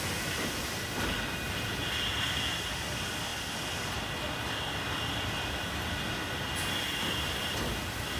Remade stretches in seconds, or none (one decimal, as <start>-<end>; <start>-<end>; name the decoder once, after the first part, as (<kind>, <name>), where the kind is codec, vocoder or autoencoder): none